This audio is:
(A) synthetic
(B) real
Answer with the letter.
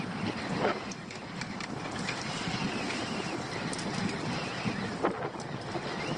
B